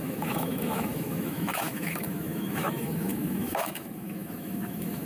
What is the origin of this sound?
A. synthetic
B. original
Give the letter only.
A